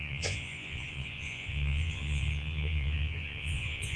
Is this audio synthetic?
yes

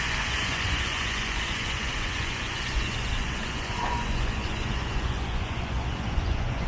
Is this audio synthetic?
yes